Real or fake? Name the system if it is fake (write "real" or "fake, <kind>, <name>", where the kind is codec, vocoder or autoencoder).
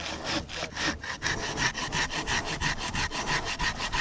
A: real